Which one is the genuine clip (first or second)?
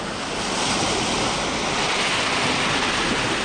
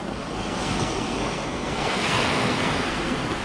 first